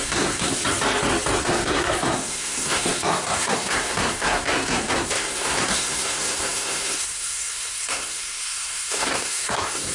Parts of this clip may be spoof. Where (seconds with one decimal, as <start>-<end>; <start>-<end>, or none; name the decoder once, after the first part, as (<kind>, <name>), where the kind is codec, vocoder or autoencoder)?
0.0-0.6 (codec, SNAC); 1.4-9.9